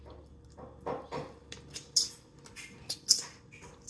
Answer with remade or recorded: recorded